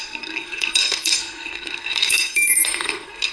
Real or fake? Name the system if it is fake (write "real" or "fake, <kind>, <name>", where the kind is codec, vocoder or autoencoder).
fake, codec, SNAC